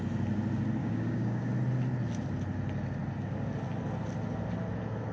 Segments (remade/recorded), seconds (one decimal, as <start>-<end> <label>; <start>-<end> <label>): 0.0-0.8 recorded; 0.8-1.5 remade; 1.5-5.1 recorded